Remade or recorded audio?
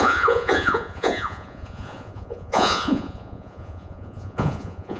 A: remade